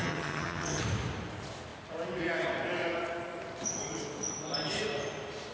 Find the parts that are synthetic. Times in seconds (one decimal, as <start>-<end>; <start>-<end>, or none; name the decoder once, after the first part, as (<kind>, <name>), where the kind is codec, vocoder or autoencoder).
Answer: 0.0-0.8 (vocoder, HiFi-GAN)